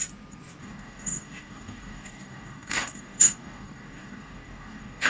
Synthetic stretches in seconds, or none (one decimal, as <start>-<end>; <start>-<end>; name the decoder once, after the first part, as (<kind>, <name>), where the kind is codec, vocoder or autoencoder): 0.6-5.1 (codec, DAC)